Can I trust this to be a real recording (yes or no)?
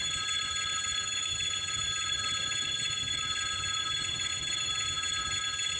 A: no